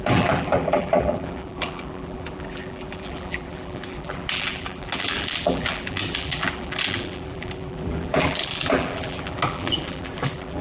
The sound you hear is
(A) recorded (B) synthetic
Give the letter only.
B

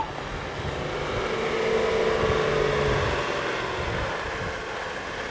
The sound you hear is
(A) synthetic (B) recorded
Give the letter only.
B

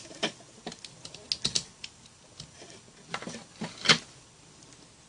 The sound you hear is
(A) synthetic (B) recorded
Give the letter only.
B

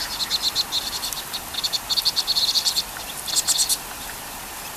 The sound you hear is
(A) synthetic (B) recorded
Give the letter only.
B